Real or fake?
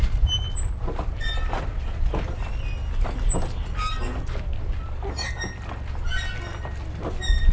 real